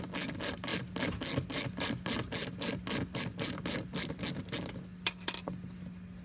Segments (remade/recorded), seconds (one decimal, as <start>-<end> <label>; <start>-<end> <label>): 0.0-6.2 recorded